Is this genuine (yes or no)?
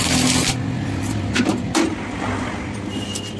yes